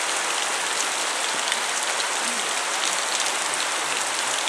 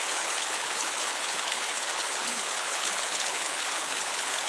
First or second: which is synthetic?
second